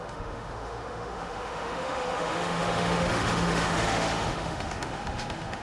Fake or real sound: fake